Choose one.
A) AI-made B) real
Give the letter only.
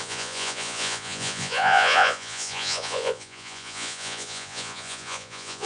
A